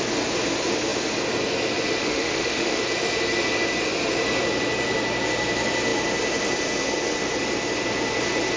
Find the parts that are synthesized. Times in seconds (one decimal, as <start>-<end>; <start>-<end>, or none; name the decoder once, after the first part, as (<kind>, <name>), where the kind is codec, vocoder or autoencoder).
2.0-2.8 (autoencoder, DAC-VAE)